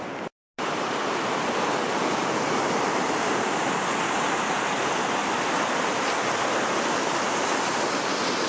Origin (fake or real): real